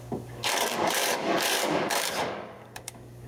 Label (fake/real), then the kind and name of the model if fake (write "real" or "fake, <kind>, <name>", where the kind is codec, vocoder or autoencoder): fake, codec, DAC